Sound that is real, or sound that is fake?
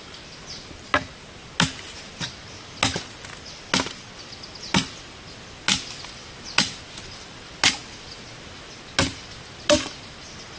real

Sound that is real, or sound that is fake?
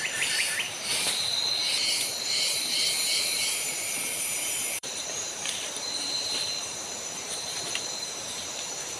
fake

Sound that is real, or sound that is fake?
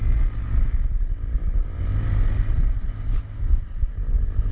real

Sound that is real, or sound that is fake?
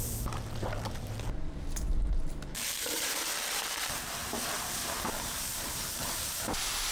fake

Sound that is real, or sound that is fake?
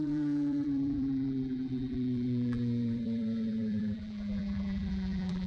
fake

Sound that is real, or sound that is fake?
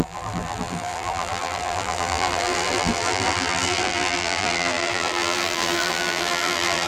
fake